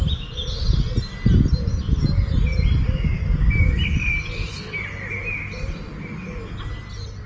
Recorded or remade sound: recorded